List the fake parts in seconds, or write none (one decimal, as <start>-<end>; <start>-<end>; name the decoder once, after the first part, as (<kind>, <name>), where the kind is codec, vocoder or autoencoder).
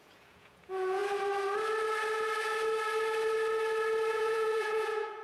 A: 0.0-1.0 (vocoder, Vocos); 4.1-5.2